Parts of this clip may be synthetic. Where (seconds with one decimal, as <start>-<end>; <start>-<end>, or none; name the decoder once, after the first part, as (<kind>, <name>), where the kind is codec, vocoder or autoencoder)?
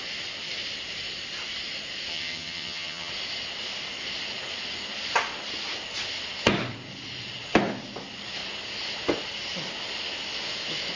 2.1-3.1 (vocoder, HiFi-GAN)